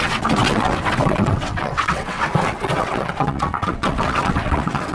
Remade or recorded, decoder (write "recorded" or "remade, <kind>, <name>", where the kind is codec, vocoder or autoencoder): remade, vocoder, WaveNeXt